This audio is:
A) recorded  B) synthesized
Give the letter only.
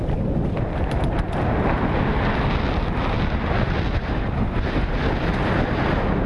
A